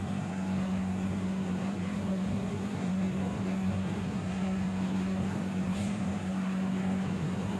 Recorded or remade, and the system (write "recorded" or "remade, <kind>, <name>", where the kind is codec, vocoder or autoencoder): remade, codec, SNAC